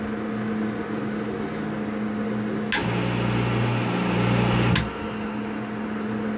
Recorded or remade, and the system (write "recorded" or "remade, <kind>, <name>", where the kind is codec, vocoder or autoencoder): recorded